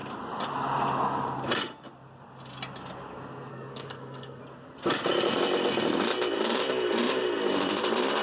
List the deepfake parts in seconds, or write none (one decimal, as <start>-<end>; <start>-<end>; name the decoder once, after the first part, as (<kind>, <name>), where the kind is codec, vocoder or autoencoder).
3.5-4.4 (codec, SNAC)